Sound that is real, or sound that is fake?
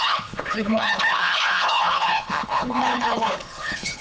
fake